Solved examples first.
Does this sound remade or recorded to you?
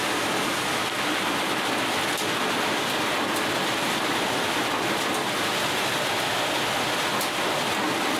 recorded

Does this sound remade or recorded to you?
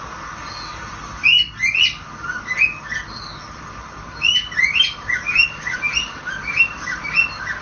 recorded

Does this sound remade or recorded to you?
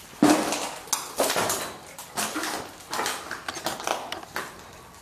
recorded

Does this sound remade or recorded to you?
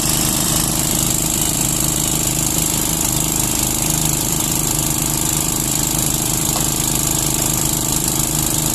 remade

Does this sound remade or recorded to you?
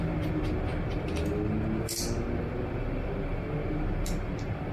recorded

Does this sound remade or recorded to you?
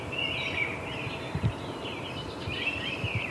remade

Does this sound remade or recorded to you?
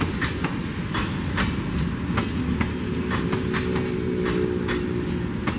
recorded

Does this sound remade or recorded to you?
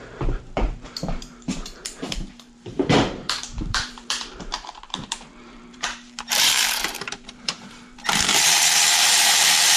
remade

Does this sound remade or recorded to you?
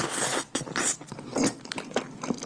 remade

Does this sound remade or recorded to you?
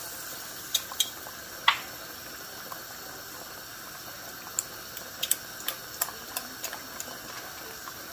recorded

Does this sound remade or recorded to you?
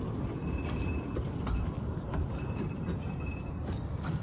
remade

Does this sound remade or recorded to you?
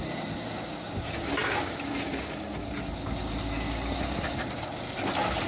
recorded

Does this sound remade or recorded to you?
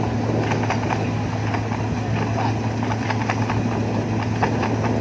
recorded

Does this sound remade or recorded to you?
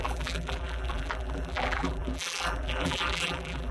remade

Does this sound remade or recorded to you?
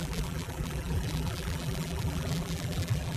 remade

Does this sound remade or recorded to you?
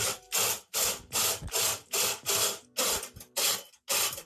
recorded